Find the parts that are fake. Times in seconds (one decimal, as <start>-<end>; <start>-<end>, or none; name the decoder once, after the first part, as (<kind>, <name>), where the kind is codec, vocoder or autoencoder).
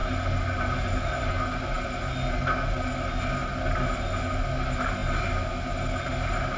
none